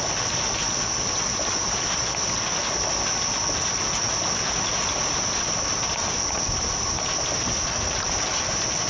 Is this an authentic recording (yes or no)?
yes